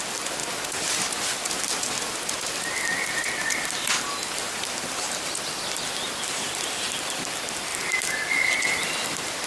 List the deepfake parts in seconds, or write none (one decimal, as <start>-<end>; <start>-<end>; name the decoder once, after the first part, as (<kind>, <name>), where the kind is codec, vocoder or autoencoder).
none